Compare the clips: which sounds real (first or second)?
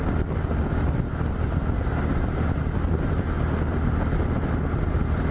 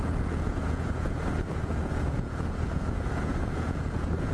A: first